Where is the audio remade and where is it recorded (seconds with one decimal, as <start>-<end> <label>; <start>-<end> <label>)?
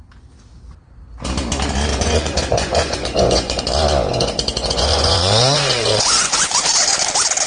0.0-1.9 recorded; 1.9-3.6 remade; 3.6-4.1 recorded; 4.1-7.1 remade; 7.1-7.5 recorded